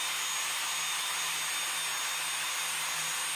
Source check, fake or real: real